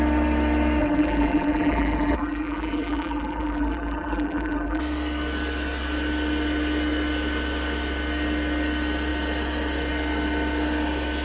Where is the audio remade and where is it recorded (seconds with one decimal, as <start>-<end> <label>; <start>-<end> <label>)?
0.0-0.8 recorded; 0.8-4.8 remade; 4.8-11.2 recorded